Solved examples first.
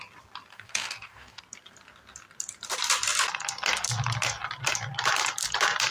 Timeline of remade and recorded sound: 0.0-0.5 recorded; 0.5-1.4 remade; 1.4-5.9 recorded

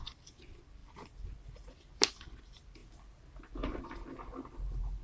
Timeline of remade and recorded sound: 0.0-5.0 recorded

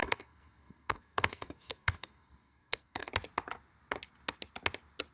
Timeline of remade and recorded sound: 0.0-3.1 remade; 3.1-5.1 recorded

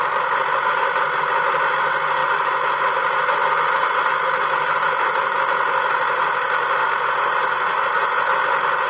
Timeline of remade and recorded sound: 0.0-8.9 recorded